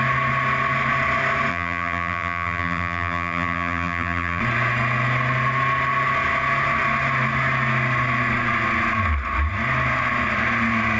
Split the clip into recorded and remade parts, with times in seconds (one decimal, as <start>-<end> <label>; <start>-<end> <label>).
0.0-1.5 recorded; 1.5-4.4 remade; 4.4-11.0 recorded